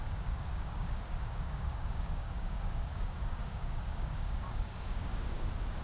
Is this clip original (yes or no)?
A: no